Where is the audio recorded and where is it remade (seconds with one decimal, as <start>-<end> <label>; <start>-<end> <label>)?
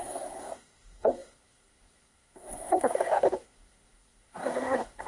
0.0-5.1 remade